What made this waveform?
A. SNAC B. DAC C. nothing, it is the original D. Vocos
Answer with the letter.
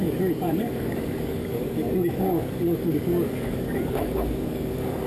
B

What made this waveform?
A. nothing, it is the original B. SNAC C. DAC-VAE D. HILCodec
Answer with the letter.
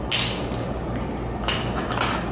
A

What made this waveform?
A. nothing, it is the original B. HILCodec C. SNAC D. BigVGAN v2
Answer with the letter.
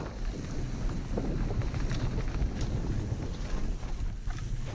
A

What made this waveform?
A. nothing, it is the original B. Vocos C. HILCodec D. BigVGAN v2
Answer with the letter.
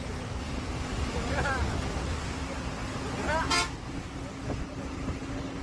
A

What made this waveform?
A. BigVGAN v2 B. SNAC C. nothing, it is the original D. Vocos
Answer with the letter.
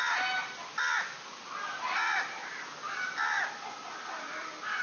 C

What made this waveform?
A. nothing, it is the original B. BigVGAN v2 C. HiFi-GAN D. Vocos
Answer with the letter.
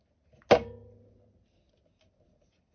A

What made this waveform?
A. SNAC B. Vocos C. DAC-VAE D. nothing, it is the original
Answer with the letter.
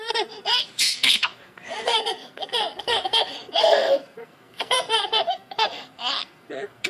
A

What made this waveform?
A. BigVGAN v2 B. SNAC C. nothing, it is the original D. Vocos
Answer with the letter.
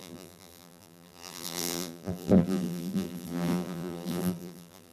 A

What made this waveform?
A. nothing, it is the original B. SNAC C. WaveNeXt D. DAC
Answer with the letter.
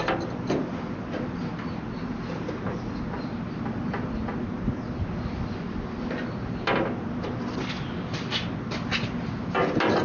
A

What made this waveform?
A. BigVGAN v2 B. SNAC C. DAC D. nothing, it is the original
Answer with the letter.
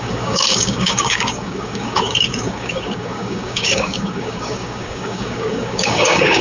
C